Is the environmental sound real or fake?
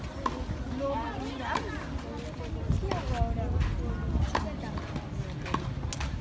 real